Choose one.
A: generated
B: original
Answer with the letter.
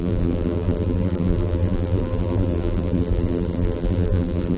A